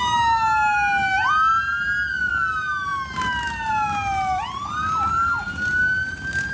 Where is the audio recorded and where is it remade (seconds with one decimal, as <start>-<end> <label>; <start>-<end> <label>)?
0.0-6.5 recorded